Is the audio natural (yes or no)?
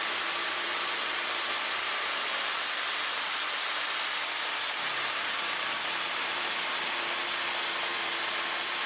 no